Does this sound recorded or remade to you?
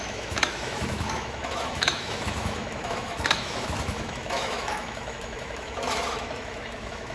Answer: remade